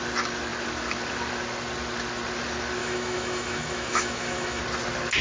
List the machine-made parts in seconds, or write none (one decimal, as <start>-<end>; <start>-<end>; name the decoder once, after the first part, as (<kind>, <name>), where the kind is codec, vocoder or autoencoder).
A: 2.8-4.6 (autoencoder, DAC-VAE)